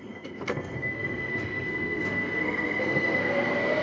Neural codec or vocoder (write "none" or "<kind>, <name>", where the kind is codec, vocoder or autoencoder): codec, SNAC